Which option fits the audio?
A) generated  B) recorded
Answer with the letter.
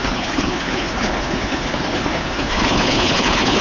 A